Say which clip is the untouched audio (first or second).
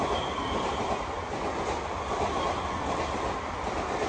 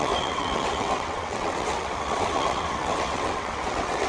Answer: first